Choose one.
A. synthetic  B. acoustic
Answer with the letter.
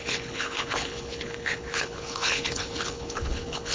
A